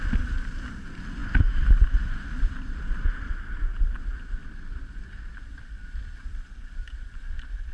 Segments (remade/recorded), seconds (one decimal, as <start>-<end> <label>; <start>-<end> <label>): 0.0-1.2 recorded; 1.2-3.0 remade; 3.0-4.1 recorded; 4.1-7.2 remade; 7.2-7.7 recorded